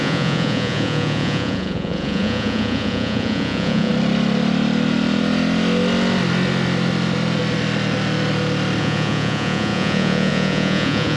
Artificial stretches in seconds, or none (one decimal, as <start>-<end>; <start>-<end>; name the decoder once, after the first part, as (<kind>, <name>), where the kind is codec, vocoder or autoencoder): 0.0-3.9 (vocoder, Vocos); 8.8-11.2